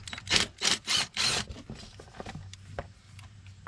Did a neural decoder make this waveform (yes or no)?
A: no